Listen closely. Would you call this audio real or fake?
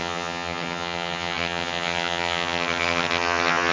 fake